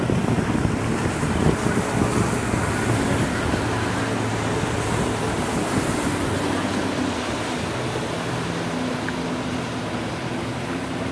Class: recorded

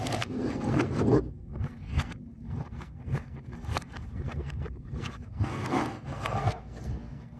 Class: remade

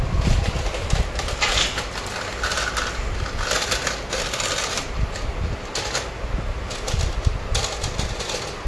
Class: recorded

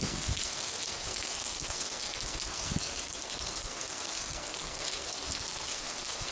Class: remade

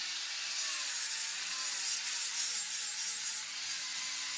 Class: recorded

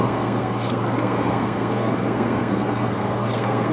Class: remade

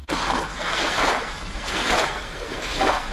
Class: remade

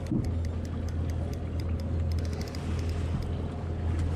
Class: recorded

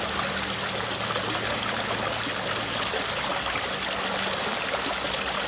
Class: recorded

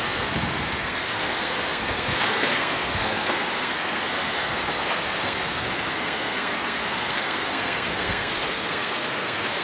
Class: remade